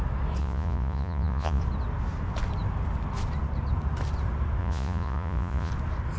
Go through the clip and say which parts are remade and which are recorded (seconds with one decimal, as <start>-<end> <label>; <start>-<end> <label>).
0.0-0.4 recorded; 0.4-1.6 remade; 1.6-4.6 recorded; 4.6-5.7 remade; 5.7-6.2 recorded

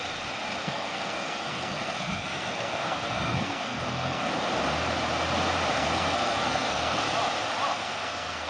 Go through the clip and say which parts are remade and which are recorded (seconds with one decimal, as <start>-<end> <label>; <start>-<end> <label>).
0.0-0.6 recorded; 0.6-4.3 remade; 4.3-5.7 recorded; 5.7-7.0 remade; 7.0-7.7 recorded; 7.7-8.5 remade

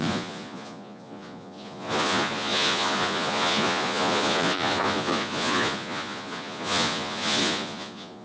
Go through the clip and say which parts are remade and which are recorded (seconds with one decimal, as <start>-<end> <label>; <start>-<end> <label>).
0.0-8.2 remade

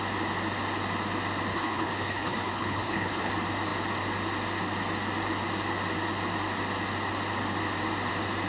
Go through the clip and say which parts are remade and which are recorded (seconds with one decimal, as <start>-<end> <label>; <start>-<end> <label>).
0.0-1.5 recorded; 1.5-3.3 remade; 3.3-8.5 recorded

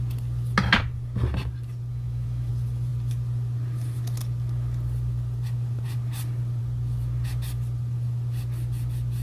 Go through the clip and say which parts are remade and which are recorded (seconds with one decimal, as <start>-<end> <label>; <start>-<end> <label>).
0.0-1.9 recorded; 1.9-2.5 remade; 2.5-9.2 recorded

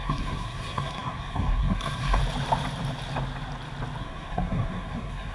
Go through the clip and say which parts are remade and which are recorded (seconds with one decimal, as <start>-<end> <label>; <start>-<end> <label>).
0.0-2.2 remade; 2.2-4.0 recorded; 4.0-5.3 remade

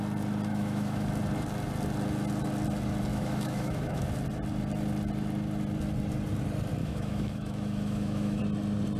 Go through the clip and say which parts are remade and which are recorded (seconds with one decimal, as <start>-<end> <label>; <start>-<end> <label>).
0.0-0.5 recorded; 0.5-1.1 remade; 1.1-3.1 recorded; 3.1-4.0 remade; 4.0-6.8 recorded; 6.8-8.4 remade; 8.4-9.0 recorded

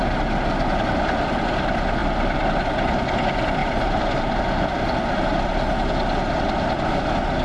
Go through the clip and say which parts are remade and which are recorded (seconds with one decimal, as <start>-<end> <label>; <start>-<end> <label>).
0.0-3.6 recorded; 3.6-4.4 remade; 4.4-7.4 recorded